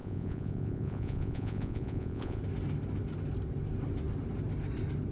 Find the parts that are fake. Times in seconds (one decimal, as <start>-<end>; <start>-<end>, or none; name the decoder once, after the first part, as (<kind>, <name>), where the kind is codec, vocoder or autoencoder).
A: 0.0-2.4 (vocoder, Vocos)